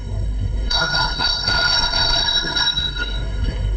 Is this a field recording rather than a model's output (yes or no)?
no